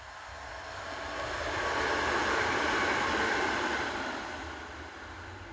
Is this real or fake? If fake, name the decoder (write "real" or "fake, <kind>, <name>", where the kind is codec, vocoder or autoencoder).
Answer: real